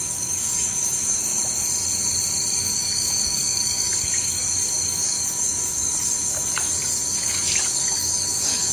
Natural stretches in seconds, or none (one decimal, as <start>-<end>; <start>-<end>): 1.2-2.6